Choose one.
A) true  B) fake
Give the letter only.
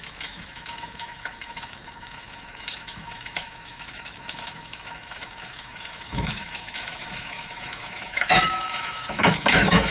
B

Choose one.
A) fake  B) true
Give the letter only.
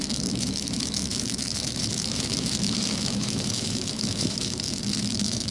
A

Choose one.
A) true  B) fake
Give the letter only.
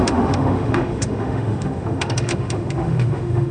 B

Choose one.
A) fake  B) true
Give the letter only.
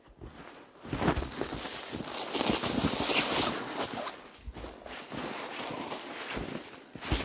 B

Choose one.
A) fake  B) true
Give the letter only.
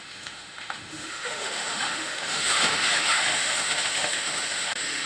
A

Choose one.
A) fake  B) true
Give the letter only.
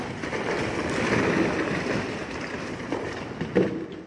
B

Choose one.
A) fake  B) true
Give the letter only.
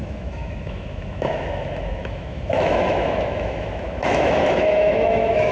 A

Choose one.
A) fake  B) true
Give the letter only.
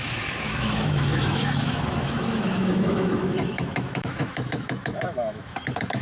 A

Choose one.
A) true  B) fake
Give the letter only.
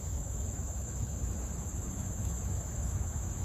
B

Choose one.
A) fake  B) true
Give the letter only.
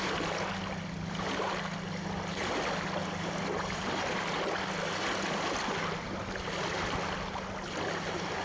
B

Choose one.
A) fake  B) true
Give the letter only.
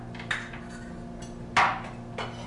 B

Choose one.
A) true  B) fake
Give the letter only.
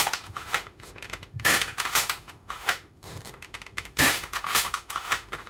B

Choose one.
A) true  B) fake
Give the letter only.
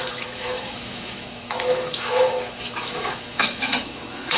B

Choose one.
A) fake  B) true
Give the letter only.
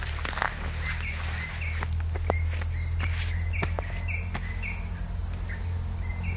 B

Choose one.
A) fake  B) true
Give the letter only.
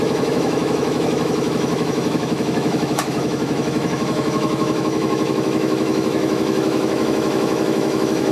A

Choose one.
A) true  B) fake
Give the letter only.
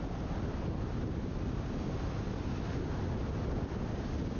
A